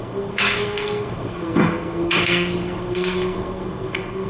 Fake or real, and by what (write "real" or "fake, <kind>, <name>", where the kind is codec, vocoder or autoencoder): fake, codec, SNAC